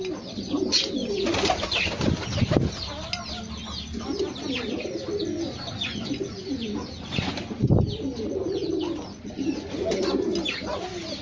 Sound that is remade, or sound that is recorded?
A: recorded